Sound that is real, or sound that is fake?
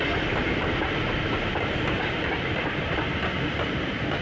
fake